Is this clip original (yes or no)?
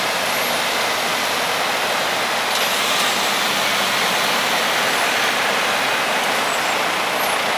yes